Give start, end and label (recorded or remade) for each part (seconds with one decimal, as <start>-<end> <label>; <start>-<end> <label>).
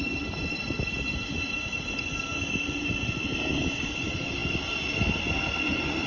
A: 0.0-6.1 recorded